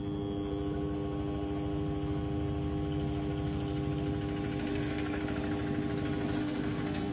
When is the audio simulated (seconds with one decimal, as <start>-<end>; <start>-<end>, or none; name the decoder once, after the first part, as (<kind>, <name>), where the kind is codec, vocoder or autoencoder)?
4.7-5.2 (codec, SNAC); 6.4-7.1